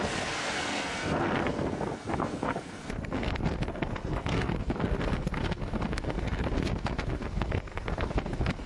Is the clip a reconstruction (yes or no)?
yes